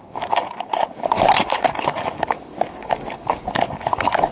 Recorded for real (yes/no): no